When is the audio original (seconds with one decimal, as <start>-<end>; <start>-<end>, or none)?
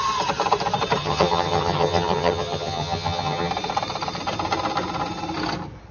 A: 0.0-1.0; 3.5-5.9